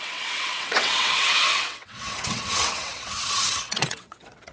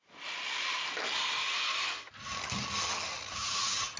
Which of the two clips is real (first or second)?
second